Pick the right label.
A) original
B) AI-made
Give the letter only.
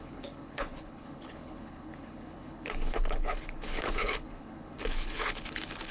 B